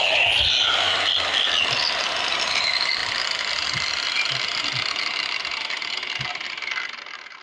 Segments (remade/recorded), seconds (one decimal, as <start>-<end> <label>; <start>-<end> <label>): 0.0-7.4 recorded